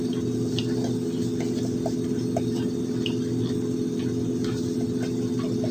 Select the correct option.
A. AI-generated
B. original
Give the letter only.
B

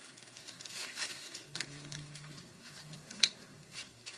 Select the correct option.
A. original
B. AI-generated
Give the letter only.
B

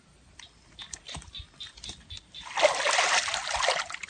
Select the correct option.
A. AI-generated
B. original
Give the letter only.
B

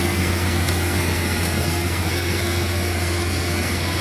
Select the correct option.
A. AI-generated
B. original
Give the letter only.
A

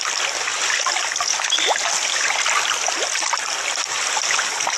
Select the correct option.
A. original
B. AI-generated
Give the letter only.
A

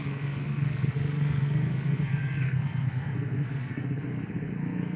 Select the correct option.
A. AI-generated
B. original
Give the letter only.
A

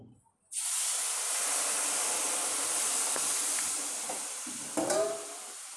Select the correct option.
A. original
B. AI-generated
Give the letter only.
A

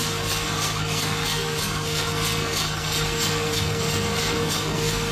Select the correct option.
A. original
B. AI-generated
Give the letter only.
B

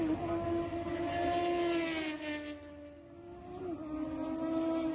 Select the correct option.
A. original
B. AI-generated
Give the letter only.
A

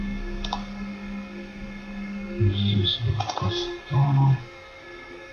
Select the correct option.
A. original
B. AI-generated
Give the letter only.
B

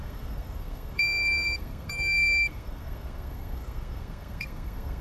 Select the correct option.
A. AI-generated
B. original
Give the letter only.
A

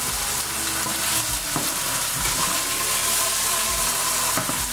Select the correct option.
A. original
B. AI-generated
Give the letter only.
A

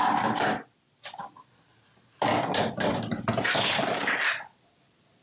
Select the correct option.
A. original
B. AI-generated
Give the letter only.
A